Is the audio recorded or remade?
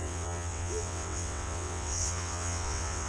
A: remade